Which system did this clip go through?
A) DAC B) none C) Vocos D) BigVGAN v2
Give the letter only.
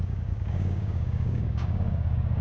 A